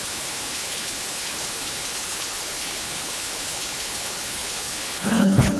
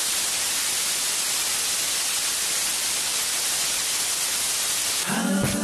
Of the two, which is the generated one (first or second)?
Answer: first